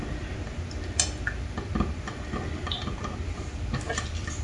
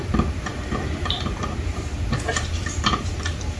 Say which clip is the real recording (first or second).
first